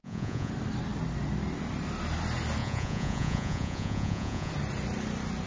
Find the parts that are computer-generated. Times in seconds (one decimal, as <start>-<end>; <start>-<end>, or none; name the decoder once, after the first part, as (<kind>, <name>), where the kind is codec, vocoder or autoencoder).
0.0-0.5 (vocoder, Vocos); 2.6-4.5